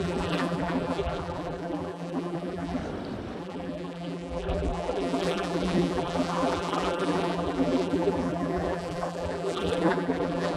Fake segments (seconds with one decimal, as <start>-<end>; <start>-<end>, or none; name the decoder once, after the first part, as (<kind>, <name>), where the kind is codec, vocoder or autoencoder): 0.0-2.8 (vocoder, BigVGAN v2); 3.4-10.6